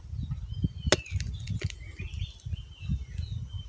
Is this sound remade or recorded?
recorded